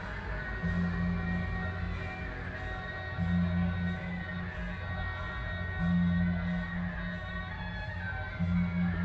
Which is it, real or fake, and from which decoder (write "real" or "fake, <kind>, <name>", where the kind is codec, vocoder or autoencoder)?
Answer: real